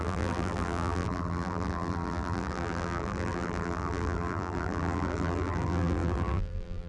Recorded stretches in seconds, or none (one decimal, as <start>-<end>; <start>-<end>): none